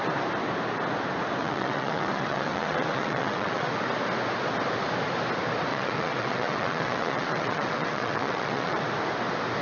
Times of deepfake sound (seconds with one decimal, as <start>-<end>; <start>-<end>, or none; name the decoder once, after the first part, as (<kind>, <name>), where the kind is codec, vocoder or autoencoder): 1.4-3.7 (vocoder, WaveNeXt); 5.7-8.8